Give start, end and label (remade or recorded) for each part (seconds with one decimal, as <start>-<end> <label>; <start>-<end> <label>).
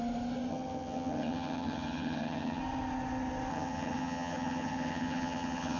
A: 0.0-0.5 recorded; 0.5-2.6 remade; 2.6-3.5 recorded; 3.5-5.8 remade